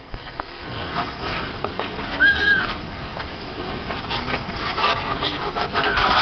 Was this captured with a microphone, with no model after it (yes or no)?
no